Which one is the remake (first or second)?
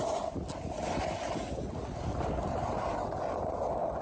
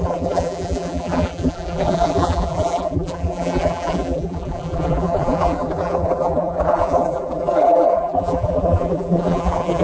second